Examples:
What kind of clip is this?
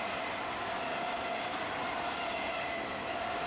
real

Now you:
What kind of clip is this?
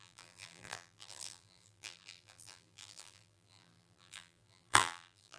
fake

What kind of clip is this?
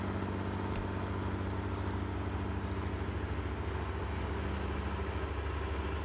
real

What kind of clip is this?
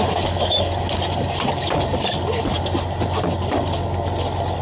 real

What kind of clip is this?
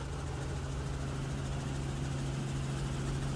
real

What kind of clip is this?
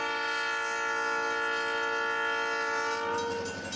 real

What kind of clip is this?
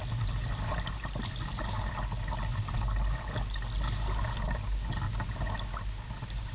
real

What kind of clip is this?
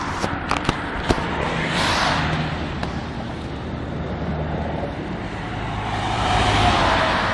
fake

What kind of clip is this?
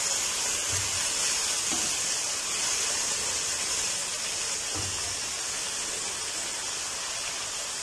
real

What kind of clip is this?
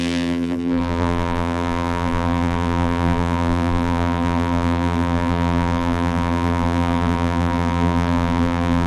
fake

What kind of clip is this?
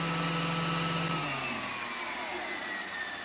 real